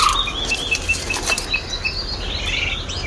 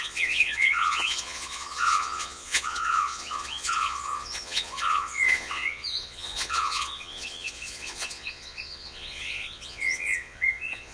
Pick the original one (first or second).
first